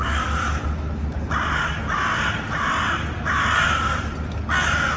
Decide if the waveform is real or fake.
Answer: real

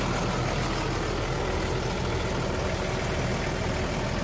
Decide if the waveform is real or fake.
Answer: real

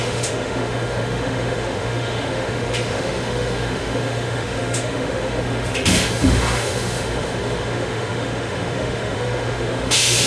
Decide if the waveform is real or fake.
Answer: fake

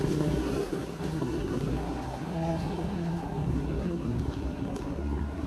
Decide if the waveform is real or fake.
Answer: fake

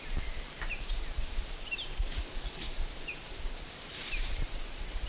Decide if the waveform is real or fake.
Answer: fake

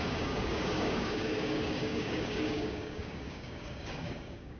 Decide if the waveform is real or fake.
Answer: fake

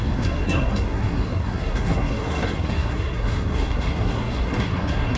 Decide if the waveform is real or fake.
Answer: fake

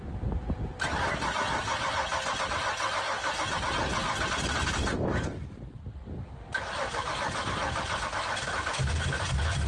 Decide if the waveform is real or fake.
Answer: real